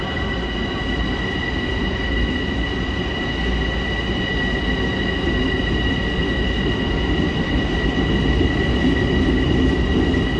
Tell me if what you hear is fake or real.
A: real